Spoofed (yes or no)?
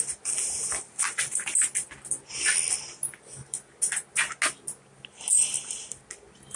no